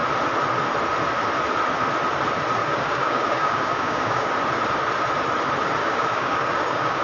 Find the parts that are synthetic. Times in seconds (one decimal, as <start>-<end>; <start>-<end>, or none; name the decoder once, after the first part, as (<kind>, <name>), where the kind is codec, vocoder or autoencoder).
2.6-4.3 (codec, DAC); 5.8-7.0